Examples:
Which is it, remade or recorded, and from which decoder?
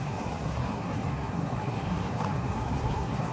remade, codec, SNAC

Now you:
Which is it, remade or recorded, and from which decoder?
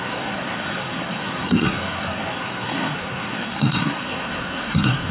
remade, codec, SNAC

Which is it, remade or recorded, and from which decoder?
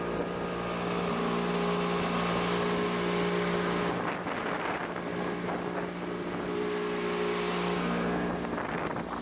recorded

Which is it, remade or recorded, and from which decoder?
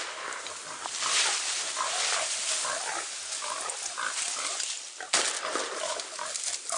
recorded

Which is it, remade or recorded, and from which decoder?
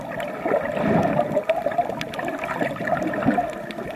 recorded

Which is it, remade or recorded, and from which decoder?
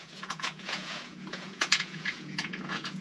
remade, vocoder, Vocos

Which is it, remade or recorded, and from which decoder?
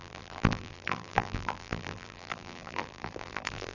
remade, vocoder, BigVGAN v2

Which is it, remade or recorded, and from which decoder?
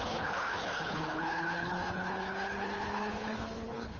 remade, codec, HILCodec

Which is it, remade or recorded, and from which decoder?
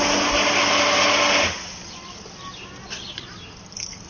recorded